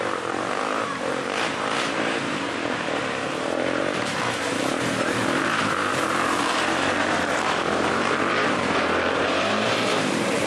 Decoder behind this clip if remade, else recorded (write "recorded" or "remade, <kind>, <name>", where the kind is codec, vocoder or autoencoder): remade, vocoder, BigVGAN v2